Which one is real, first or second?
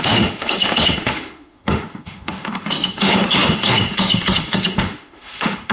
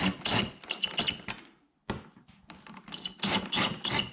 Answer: second